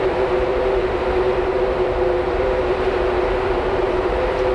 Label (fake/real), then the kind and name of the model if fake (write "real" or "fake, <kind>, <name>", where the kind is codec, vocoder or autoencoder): fake, vocoder, BigVGAN v2